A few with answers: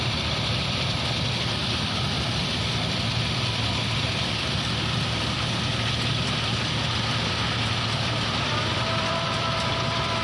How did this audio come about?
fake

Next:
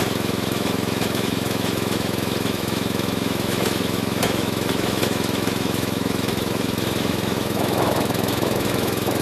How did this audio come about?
fake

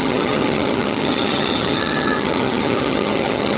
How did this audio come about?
fake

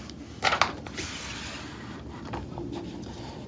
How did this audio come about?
real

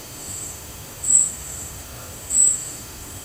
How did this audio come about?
fake